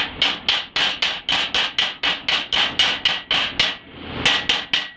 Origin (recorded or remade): recorded